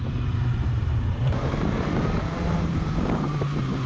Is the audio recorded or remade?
remade